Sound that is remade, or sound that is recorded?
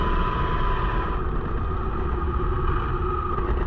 recorded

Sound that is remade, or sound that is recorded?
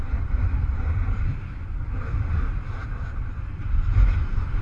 recorded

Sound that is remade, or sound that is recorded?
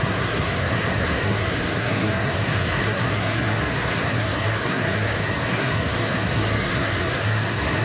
remade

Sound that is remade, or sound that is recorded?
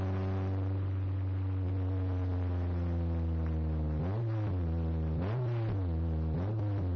recorded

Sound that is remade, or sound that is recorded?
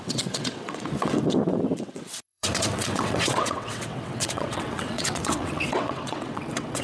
remade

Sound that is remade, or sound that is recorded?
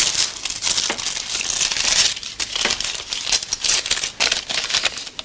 recorded